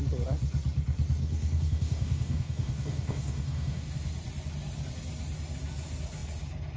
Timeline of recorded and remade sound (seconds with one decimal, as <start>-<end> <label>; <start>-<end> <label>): 0.0-1.2 recorded; 1.2-3.9 remade; 3.9-6.8 recorded